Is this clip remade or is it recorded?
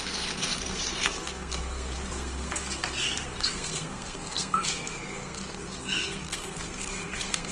remade